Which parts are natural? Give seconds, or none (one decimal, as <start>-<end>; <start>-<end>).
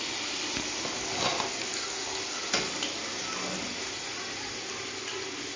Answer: 0.0-5.6